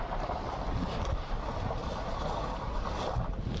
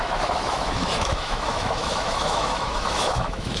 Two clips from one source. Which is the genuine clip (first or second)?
first